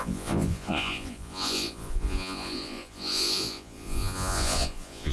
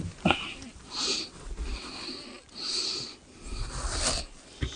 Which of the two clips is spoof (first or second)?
first